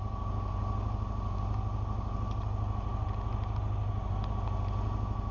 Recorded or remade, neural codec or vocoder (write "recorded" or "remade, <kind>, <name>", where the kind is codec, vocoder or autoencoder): recorded